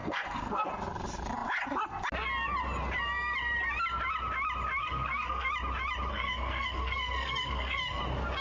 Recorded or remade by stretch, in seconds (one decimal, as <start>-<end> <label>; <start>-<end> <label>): 0.0-0.7 remade; 0.7-4.8 recorded; 4.8-5.5 remade; 5.5-6.1 recorded; 6.1-8.0 remade; 8.0-8.4 recorded